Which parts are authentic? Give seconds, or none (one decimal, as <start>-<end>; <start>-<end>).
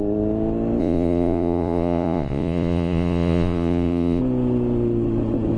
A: 0.0-0.8; 4.2-5.6